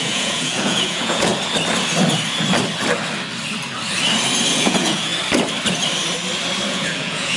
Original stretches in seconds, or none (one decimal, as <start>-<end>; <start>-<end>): 1.3-4.5; 5.1-6.7